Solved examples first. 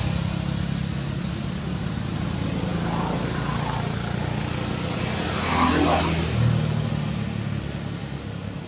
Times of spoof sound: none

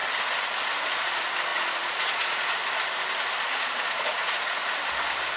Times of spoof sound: 1.0-2.6 (vocoder, Vocos); 3.4-4.6

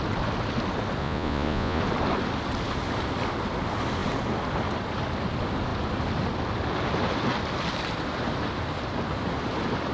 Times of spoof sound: 1.0-1.8 (vocoder, Vocos)

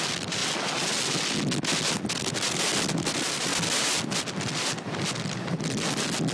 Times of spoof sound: 0.0-0.4 (vocoder, BigVGAN v2); 3.1-3.5; 4.2-6.3

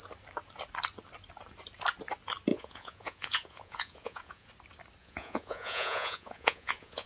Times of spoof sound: 2.5-4.5 (vocoder, Vocos); 5.0-7.1

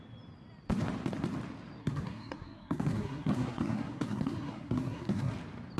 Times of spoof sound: 1.8-5.3 (codec, SNAC)